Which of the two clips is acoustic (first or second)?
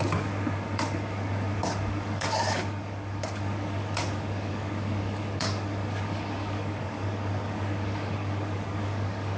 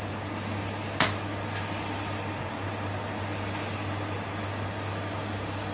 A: second